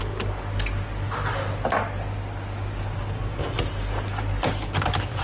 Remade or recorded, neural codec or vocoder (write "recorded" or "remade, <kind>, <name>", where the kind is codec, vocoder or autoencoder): recorded